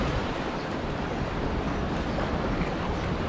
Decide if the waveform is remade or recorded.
recorded